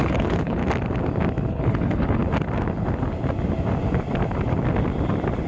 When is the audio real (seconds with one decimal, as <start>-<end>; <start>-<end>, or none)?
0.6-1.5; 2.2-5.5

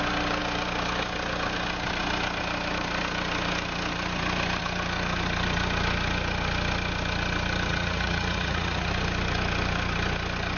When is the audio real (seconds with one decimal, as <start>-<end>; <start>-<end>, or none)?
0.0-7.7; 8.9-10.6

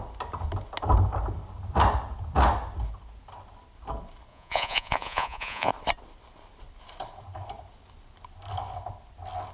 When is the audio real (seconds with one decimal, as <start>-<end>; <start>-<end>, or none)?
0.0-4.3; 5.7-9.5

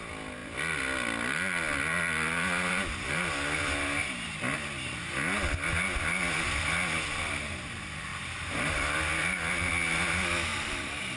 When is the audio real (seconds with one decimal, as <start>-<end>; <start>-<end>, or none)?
0.0-8.1; 8.7-10.5